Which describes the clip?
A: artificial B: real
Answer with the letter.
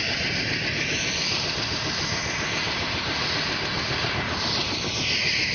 B